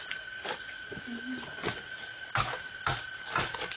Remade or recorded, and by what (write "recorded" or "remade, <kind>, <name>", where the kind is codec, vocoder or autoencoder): recorded